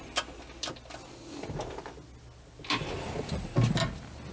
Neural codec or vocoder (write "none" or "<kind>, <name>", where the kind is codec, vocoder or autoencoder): none